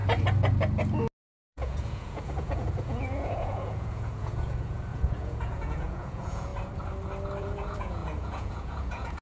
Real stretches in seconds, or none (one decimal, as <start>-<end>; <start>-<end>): 0.0-1.4; 6.5-7.4